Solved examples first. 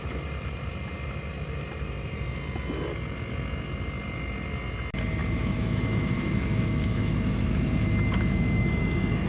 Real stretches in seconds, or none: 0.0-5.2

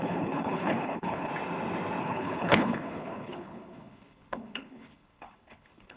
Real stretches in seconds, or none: 1.3-2.0